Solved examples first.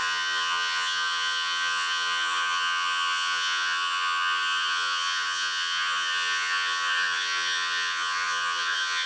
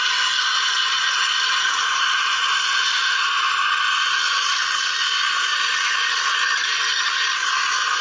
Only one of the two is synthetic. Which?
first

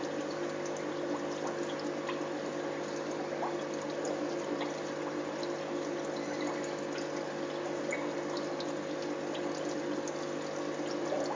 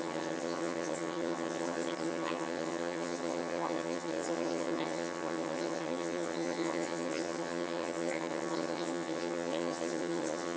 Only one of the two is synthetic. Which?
second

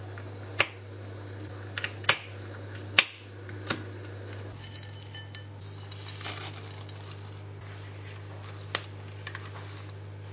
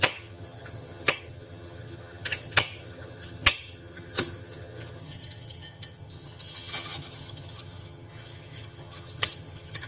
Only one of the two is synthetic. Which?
second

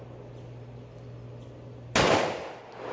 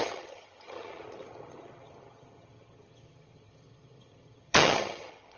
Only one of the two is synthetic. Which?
second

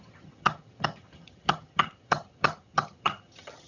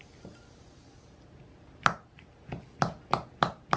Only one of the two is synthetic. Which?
first